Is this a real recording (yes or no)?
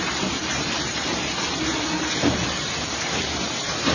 no